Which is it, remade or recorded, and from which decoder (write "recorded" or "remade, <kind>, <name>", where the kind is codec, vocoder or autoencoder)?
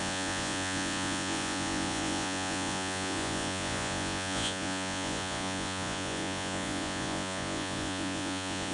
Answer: remade, vocoder, Vocos